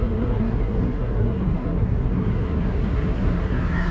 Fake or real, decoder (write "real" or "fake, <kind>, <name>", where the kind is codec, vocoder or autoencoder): fake, codec, SNAC